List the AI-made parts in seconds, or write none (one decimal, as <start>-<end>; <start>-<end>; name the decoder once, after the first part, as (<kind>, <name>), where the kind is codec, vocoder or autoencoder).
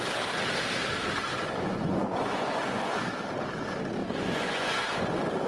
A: 1.3-3.1 (vocoder, Vocos); 4.0-5.0